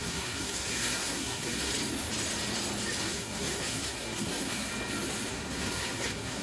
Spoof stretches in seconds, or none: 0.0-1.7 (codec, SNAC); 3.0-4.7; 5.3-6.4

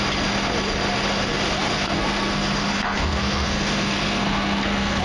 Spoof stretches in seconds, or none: 1.7-5.0 (codec, SNAC)

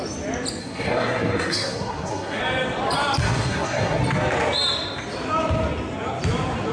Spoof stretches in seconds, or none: 0.6-2.4 (codec, SNAC); 3.2-4.0

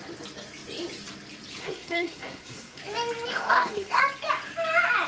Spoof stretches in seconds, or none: 1.6-2.8 (codec, SNAC); 3.3-4.0

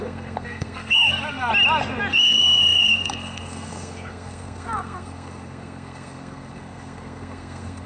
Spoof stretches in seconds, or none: 0.0-1.5 (codec, SNAC); 2.1-7.9

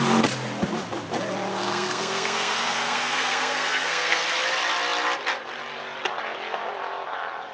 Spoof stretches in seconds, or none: 1.5-4.2 (codec, SNAC)

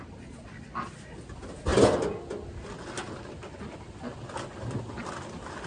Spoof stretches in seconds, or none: none